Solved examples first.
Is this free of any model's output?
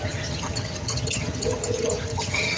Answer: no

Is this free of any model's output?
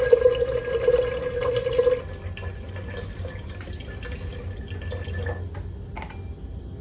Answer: yes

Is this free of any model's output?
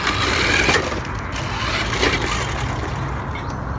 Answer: yes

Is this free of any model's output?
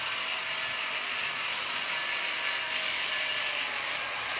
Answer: yes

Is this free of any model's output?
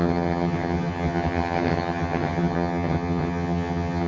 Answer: no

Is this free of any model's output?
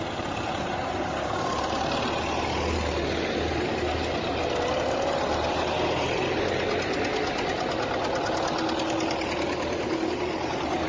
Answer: yes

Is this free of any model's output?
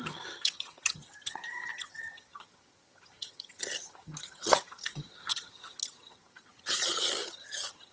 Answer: no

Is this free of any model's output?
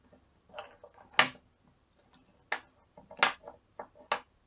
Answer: yes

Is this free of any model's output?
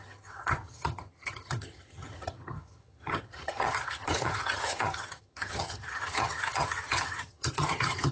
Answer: no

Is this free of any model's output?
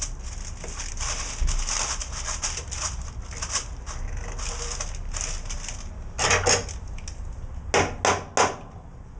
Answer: yes